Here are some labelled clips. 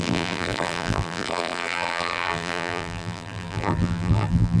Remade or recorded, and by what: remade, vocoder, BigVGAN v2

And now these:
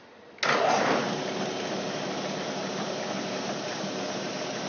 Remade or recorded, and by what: recorded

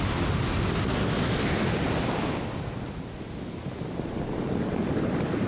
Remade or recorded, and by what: recorded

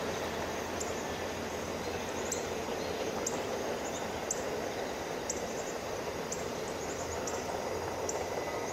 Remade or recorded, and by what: recorded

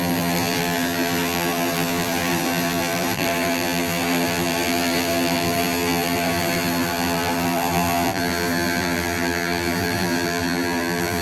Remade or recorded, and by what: remade, vocoder, BigVGAN v2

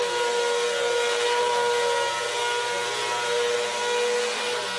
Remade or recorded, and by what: recorded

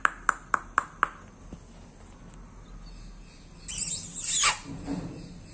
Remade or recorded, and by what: recorded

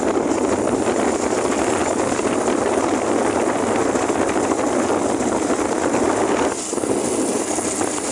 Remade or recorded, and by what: recorded